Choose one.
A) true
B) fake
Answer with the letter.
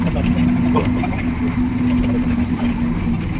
A